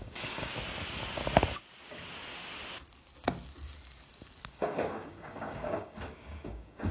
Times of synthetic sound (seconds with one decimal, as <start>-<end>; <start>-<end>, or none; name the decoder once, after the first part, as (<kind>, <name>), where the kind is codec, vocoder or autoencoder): 0.0-0.5 (codec, DAC); 4.5-6.9